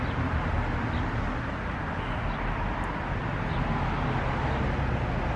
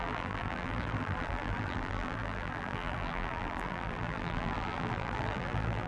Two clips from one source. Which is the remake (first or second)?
second